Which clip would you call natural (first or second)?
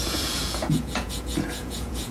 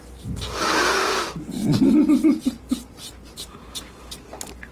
second